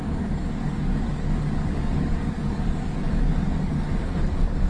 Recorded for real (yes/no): no